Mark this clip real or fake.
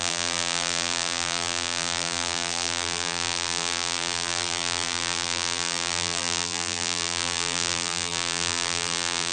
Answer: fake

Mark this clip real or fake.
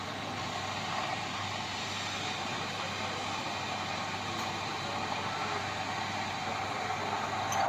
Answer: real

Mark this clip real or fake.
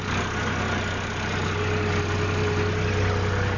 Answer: real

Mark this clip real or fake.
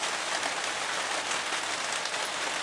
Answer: real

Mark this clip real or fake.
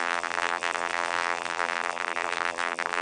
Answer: fake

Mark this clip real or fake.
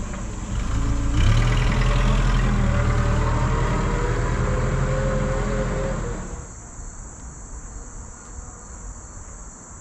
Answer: real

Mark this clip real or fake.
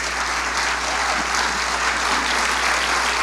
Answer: real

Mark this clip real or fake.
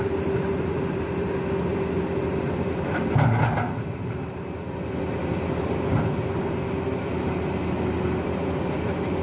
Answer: real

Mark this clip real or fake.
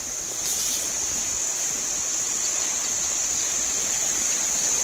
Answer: real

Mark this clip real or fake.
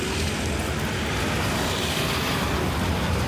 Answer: real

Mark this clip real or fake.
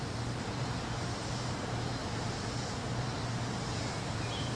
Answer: fake